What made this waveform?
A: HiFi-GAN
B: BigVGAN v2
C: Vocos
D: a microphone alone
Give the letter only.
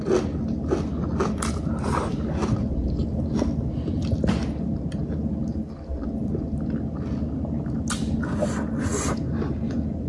D